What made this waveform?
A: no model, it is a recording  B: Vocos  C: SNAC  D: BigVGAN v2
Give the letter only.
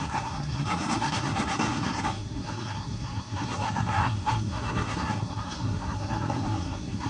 C